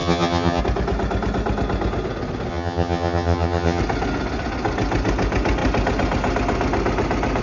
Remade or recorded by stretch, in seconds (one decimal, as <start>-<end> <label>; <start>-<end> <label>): 0.0-0.6 remade; 0.6-2.5 recorded; 2.5-3.8 remade; 3.8-7.4 recorded